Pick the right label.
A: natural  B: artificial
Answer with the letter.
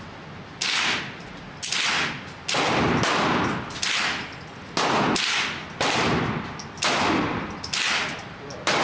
A